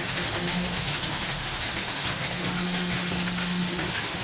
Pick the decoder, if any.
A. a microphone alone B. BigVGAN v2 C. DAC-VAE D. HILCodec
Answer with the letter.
C